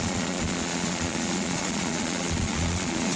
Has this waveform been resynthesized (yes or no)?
yes